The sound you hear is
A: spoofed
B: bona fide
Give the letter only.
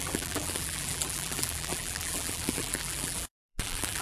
A